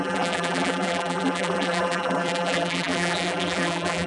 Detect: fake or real fake